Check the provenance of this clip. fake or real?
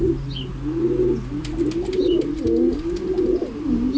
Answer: real